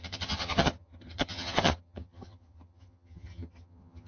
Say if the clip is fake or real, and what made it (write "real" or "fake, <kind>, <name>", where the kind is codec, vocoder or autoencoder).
fake, vocoder, HiFi-GAN